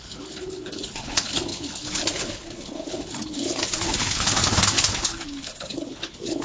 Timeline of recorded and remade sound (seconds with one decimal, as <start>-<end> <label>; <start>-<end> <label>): 0.0-6.4 remade